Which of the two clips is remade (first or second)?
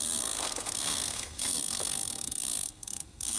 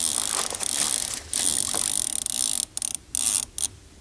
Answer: first